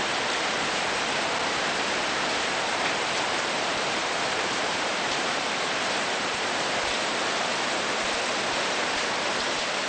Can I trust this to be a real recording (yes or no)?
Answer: no